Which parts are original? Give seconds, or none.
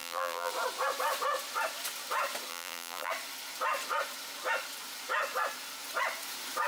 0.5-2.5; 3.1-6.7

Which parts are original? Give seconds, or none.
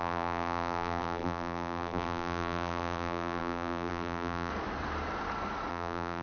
4.5-5.7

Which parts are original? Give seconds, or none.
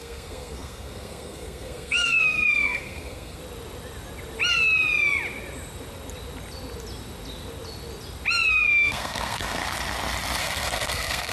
3.4-8.5; 9.6-10.4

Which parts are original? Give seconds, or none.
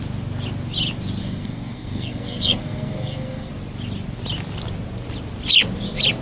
0.0-1.2; 3.5-6.2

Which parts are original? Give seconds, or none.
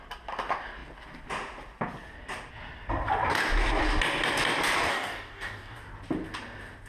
0.0-4.9; 5.8-6.9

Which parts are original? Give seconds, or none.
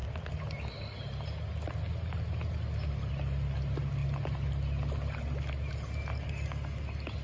0.0-7.2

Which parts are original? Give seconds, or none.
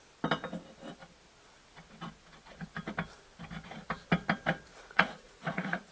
0.0-4.7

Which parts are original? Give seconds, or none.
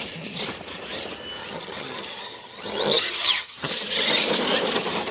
0.0-1.4; 3.7-5.1